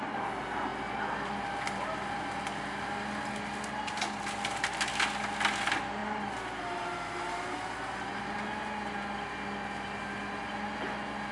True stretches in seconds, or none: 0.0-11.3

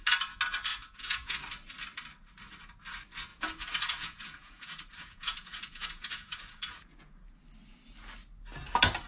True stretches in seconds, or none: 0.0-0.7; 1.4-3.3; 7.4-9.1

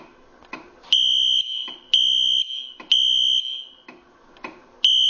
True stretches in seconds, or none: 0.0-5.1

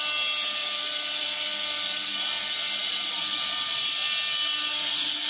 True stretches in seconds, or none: 0.0-0.6; 2.2-2.8; 3.8-5.3

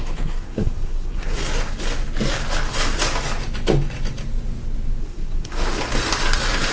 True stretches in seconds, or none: 1.4-5.0; 5.8-6.7

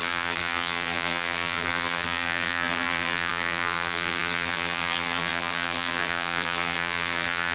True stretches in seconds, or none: none

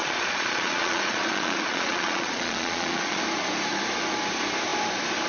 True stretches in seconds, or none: 3.2-5.3